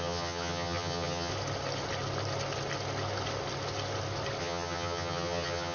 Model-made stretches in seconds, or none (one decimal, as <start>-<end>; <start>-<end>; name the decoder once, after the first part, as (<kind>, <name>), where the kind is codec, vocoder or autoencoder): 0.0-1.3 (vocoder, HiFi-GAN); 4.4-5.7